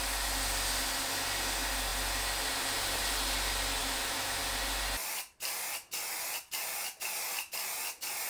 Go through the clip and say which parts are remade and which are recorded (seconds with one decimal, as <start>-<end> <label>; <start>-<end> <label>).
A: 0.0-3.8 recorded; 3.8-4.4 remade; 4.4-8.3 recorded

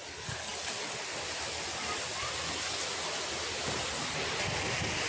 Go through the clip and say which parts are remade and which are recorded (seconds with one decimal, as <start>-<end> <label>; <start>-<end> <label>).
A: 0.0-5.1 recorded

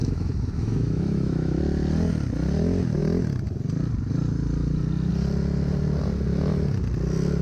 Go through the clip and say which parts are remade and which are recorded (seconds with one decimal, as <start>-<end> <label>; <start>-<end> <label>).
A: 0.0-1.6 remade; 1.6-7.4 recorded

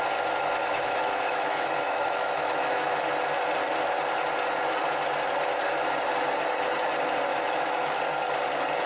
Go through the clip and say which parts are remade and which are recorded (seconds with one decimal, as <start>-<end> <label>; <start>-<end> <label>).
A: 0.0-0.6 recorded; 0.6-3.0 remade; 3.0-7.3 recorded; 7.3-8.0 remade; 8.0-8.9 recorded

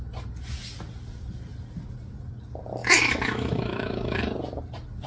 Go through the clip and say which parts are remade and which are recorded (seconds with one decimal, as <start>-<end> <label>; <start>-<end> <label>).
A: 0.0-2.8 recorded; 2.8-4.2 remade; 4.2-5.1 recorded

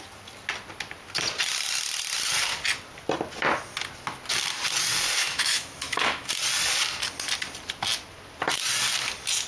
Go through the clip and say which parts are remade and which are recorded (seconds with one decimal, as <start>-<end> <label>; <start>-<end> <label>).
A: 0.0-5.2 recorded; 5.2-6.3 remade; 6.3-9.5 recorded

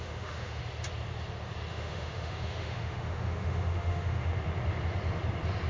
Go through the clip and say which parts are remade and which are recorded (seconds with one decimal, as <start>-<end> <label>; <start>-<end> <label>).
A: 0.0-0.6 remade; 0.6-1.7 recorded; 1.7-4.3 remade; 4.3-5.7 recorded

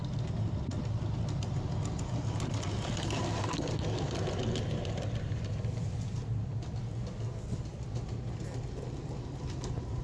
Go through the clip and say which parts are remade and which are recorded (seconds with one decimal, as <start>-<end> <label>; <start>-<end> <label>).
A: 0.0-10.0 recorded